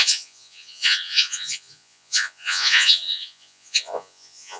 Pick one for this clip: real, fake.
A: fake